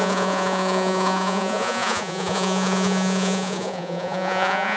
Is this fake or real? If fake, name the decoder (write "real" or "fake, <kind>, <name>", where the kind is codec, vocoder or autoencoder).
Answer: fake, vocoder, Vocos